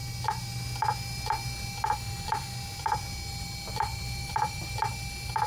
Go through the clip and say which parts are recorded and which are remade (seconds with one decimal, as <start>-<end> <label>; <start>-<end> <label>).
0.0-4.2 recorded; 4.2-4.7 remade; 4.7-5.5 recorded